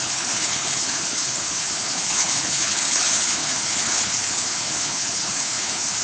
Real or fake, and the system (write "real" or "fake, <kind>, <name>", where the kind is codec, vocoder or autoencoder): fake, codec, HILCodec